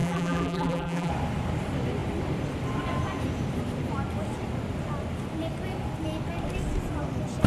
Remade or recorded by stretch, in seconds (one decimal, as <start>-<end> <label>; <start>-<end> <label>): 0.0-1.1 remade; 1.1-7.5 recorded